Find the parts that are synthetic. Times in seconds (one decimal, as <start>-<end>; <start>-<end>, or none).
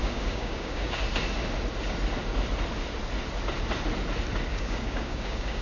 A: 0.0-1.0; 4.5-5.6